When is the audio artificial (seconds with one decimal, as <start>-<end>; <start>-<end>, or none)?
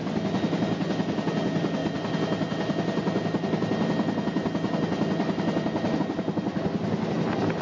none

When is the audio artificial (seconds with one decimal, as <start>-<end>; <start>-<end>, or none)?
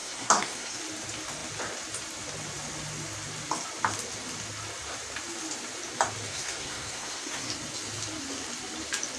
0.0-0.8; 6.3-7.5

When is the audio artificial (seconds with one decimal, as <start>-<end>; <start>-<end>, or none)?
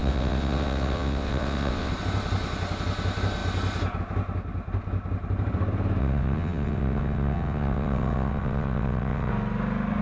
0.0-1.9; 6.0-9.3